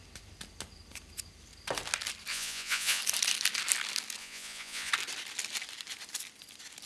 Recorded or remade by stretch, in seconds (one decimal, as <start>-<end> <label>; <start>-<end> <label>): 0.0-2.3 recorded; 2.3-3.0 remade; 3.0-4.2 recorded; 4.2-4.9 remade; 4.9-6.9 recorded